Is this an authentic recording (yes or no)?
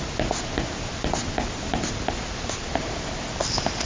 yes